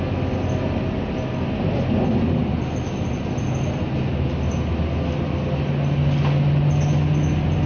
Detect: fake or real real